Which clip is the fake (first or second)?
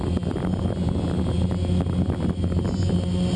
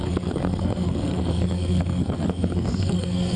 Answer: second